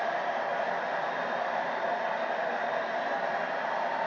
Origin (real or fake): real